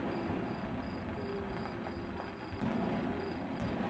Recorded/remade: recorded